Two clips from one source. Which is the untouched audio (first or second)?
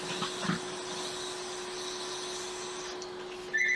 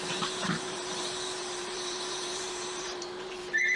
first